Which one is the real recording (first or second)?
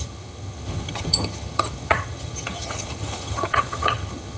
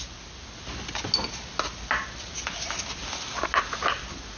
second